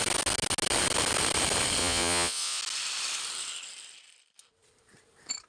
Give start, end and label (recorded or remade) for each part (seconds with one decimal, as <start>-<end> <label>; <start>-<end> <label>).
0.0-1.8 recorded; 1.8-2.6 remade; 2.6-5.5 recorded